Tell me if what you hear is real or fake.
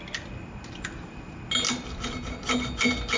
real